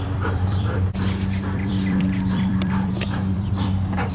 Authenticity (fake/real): fake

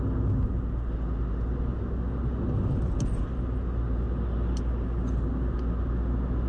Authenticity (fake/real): real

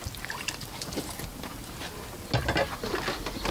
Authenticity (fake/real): real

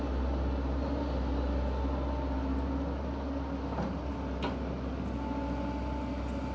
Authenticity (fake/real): real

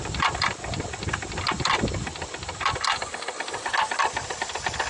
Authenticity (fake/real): real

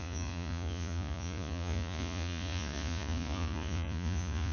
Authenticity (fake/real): fake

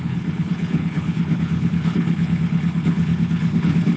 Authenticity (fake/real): fake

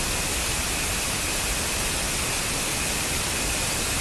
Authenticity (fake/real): real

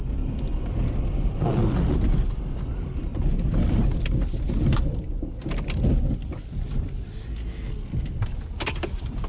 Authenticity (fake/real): real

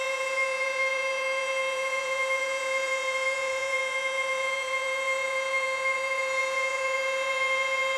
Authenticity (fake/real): fake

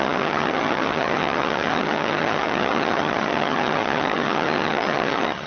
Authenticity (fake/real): fake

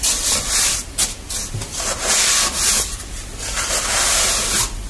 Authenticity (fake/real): real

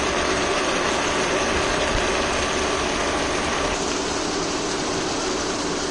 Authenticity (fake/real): real